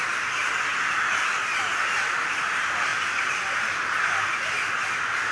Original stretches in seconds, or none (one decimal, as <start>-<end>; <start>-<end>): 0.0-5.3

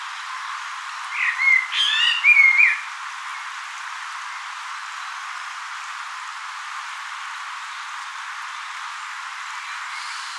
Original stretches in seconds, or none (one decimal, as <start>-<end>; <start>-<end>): 0.0-10.4

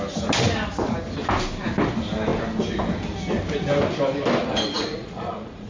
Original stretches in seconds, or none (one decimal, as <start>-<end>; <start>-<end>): 0.0-4.4